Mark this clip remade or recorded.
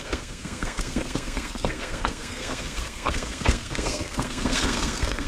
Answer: remade